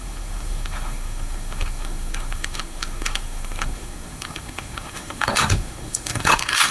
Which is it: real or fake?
fake